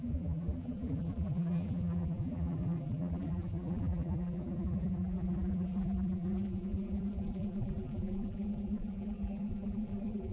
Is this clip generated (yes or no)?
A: yes